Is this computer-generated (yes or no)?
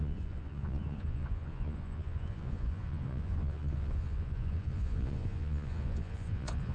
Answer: yes